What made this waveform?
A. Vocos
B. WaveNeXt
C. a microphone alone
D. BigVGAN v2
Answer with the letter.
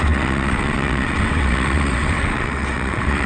B